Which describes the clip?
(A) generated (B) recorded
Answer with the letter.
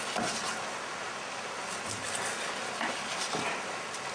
B